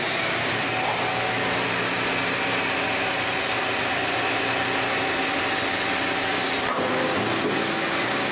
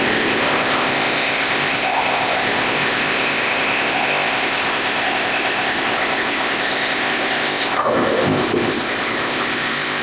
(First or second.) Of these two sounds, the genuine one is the first